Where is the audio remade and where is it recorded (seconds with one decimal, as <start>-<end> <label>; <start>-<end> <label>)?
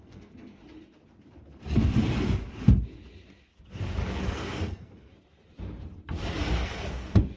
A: 0.0-0.6 remade; 0.6-4.1 recorded; 4.1-5.1 remade; 5.1-6.5 recorded; 6.5-7.4 remade